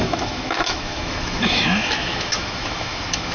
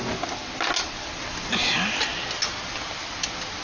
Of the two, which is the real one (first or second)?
second